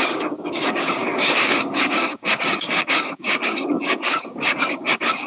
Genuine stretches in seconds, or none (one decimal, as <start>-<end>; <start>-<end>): none